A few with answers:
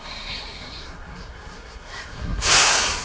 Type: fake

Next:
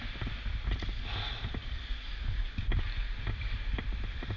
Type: real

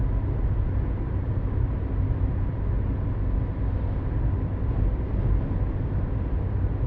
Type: real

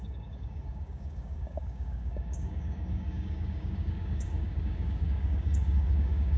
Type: fake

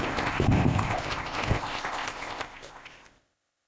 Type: fake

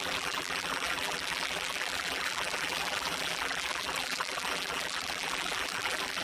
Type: fake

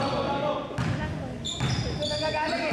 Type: real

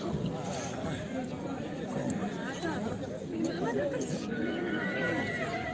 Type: real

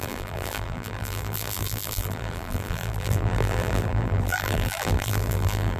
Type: fake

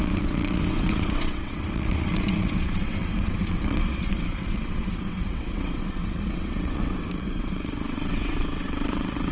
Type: fake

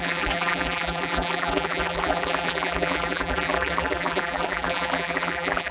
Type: fake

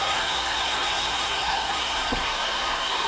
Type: fake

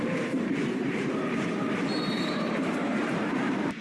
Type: fake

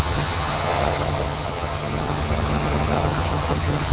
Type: fake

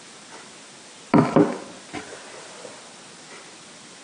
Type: real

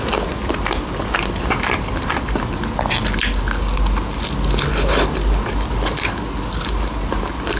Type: real